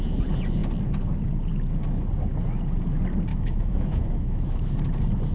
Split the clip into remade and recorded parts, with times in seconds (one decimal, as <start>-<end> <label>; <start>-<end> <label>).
0.0-3.3 recorded; 3.3-4.8 remade; 4.8-5.3 recorded